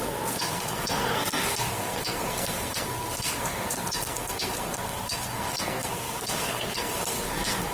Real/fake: fake